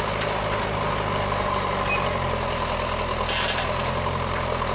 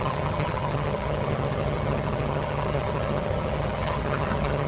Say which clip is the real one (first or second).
first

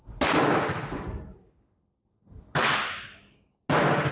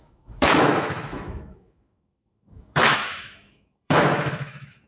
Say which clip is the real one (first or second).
first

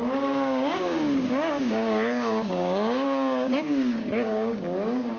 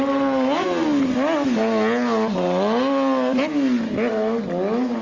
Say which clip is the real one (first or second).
second